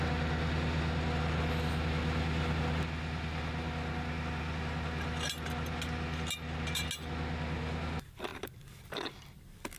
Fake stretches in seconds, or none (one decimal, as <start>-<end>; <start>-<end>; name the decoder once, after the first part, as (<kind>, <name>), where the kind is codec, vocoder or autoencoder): none